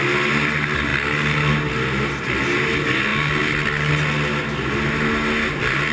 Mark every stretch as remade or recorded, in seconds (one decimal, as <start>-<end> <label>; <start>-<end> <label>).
0.0-5.9 recorded